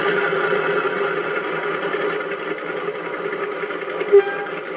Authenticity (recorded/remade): recorded